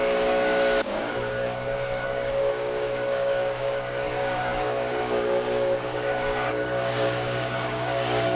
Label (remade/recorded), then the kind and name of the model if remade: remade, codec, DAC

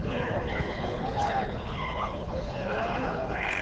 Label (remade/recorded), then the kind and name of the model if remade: remade, codec, HILCodec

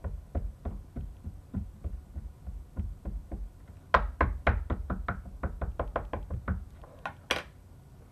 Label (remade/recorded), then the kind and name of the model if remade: recorded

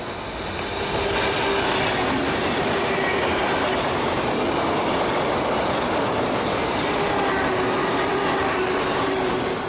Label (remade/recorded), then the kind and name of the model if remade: recorded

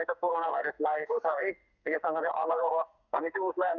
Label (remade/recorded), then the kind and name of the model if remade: remade, codec, SNAC